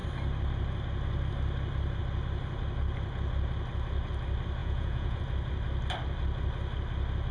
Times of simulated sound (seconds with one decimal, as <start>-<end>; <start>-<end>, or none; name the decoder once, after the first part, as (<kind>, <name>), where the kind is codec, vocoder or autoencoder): 4.6-5.2 (vocoder, Vocos)